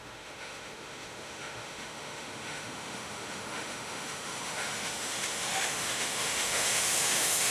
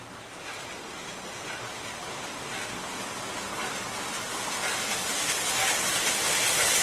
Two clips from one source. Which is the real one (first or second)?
second